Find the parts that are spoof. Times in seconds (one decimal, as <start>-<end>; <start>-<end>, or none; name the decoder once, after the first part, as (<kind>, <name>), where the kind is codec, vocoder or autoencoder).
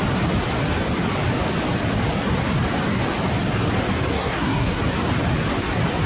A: 4.1-4.8 (codec, SNAC)